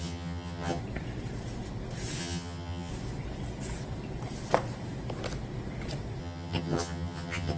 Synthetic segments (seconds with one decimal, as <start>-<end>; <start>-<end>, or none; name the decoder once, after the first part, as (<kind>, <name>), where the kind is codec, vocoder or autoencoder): 0.0-0.8 (vocoder, HiFi-GAN); 2.2-2.9; 6.2-7.6